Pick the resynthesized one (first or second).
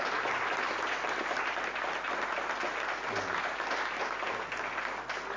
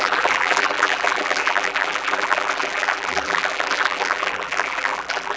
second